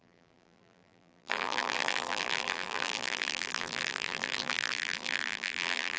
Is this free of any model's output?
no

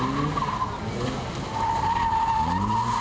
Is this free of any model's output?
yes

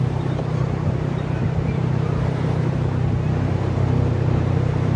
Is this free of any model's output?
no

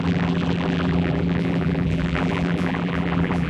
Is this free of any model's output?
no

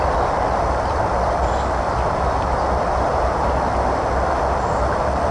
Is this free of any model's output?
yes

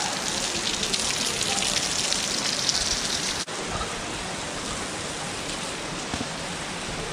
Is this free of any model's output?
yes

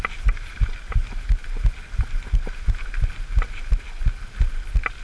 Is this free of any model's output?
yes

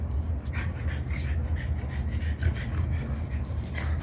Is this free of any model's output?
yes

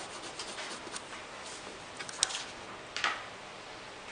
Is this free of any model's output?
yes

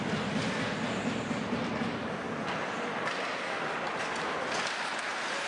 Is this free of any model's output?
yes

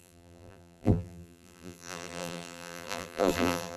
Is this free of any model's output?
no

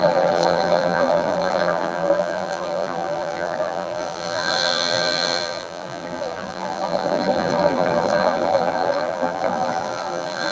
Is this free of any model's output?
no